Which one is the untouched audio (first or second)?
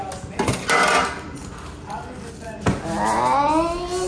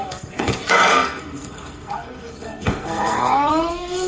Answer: first